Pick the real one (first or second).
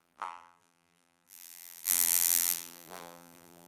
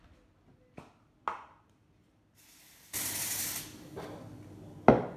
second